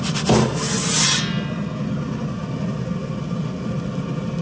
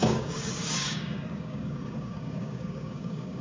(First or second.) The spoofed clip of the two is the second